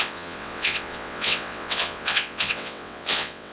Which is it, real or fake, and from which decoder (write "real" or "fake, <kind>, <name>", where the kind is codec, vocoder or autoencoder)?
fake, vocoder, WaveNeXt